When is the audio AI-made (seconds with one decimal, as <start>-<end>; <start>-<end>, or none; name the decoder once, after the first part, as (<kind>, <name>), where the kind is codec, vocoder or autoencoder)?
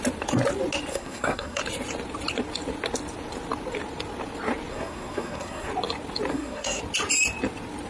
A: 0.9-1.6 (codec, SNAC); 4.7-5.7; 6.3-6.8